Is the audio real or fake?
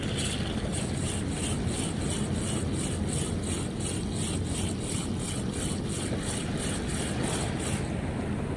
real